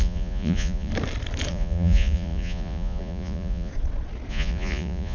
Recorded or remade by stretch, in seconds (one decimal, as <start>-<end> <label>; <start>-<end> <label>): 0.0-0.9 remade; 0.9-1.5 recorded; 1.5-3.7 remade; 3.7-4.3 recorded; 4.3-5.1 remade